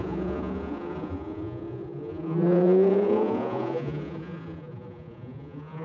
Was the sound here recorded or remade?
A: remade